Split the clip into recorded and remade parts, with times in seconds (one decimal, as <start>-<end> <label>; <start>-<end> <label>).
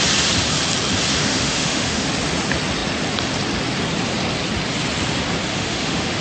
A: 0.0-1.2 recorded; 1.2-2.1 remade; 2.1-5.5 recorded; 5.5-6.2 remade